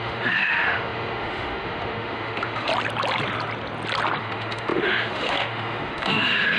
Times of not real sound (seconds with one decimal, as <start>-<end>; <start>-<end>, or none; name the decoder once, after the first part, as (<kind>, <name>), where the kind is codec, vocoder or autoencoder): 0.0-2.7 (autoencoder, DAC-VAE); 4.2-6.6